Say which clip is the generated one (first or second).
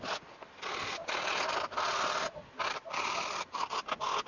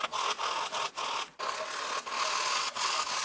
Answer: first